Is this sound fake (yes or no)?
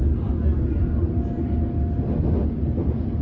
no